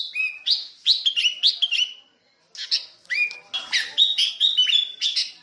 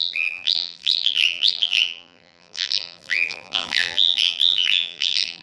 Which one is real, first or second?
first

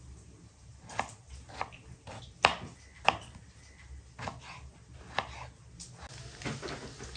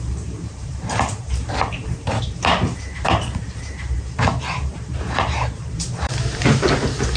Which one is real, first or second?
first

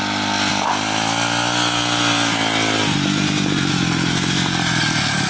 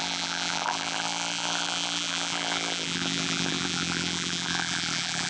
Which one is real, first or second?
first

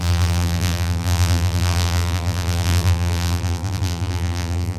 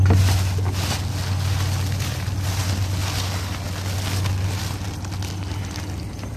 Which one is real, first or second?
second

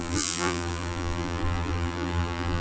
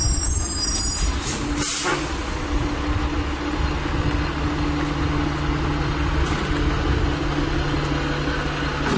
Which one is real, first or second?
second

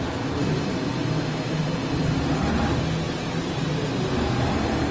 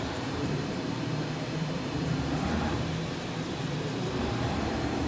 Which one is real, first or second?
first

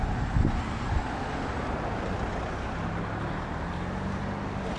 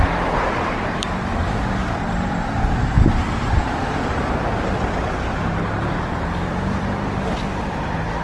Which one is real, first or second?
first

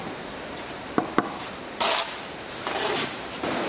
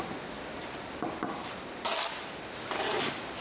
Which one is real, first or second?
second